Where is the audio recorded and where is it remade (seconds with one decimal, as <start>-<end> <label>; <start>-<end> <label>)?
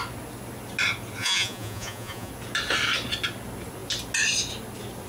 0.0-1.2 recorded; 1.2-2.3 remade; 2.3-5.1 recorded